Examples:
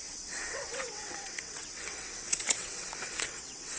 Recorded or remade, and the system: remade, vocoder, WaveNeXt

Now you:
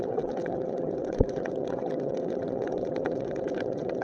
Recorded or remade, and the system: remade, vocoder, WaveNeXt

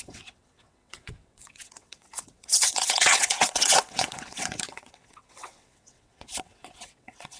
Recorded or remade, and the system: remade, vocoder, WaveNeXt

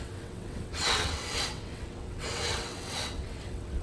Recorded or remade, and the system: remade, vocoder, WaveNeXt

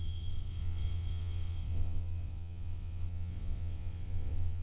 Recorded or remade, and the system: remade, vocoder, WaveNeXt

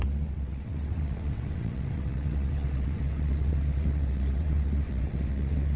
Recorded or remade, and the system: remade, vocoder, WaveNeXt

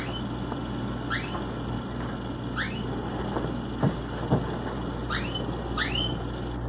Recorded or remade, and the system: recorded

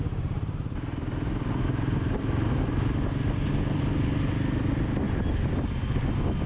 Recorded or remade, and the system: recorded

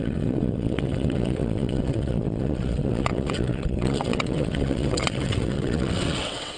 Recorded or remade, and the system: remade, vocoder, WaveNeXt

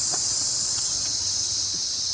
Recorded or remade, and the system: remade, vocoder, WaveNeXt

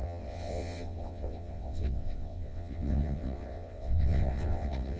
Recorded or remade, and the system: remade, vocoder, WaveNeXt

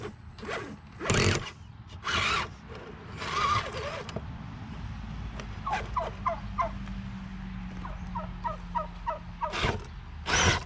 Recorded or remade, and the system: recorded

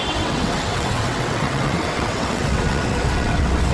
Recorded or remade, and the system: remade, vocoder, WaveNeXt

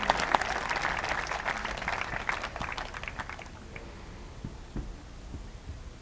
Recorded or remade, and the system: recorded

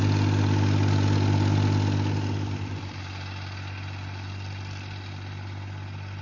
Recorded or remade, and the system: recorded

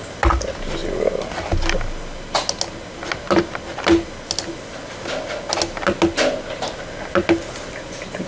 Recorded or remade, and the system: recorded